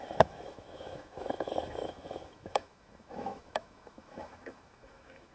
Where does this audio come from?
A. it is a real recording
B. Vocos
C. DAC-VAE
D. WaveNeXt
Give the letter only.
C